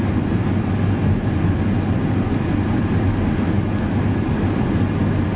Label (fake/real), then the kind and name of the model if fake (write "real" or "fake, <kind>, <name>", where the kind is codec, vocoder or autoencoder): real